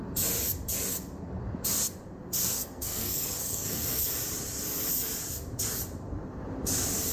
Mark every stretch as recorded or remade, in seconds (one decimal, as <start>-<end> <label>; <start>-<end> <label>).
0.0-2.4 recorded; 2.4-4.0 remade; 4.0-7.1 recorded